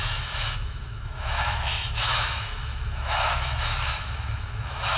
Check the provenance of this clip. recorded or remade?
remade